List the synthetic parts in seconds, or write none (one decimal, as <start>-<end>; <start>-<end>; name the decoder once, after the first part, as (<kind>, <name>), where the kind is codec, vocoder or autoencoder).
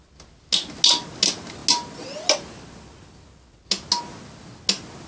none